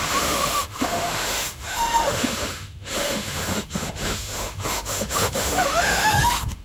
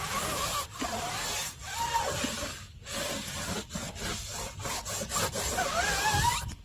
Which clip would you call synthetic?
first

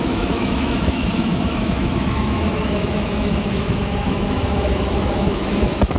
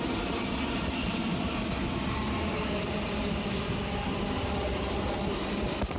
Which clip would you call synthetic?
first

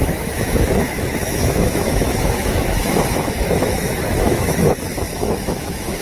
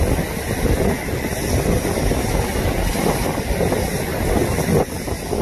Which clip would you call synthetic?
first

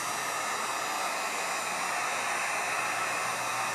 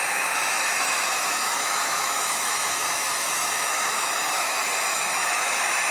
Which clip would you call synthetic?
second